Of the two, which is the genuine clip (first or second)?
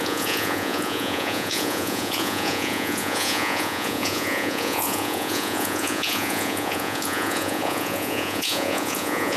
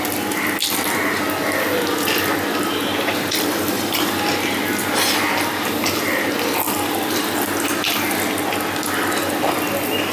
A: second